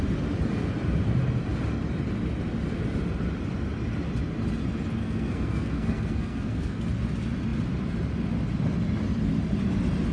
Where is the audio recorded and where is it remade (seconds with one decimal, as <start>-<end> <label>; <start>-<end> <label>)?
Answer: 0.0-5.0 recorded; 5.0-6.8 remade; 6.8-10.1 recorded